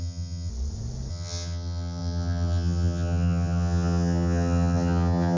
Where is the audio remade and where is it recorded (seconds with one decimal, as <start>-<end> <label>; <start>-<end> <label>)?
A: 0.0-0.5 remade; 0.5-1.1 recorded; 1.1-5.4 remade